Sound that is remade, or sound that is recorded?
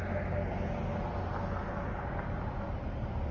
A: recorded